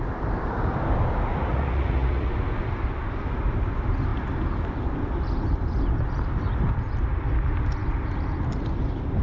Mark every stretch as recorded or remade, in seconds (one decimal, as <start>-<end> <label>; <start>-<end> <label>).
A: 0.0-1.5 recorded; 1.5-2.3 remade; 2.3-9.2 recorded